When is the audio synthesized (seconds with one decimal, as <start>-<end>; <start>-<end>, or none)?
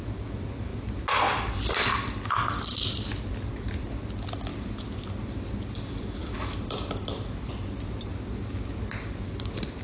none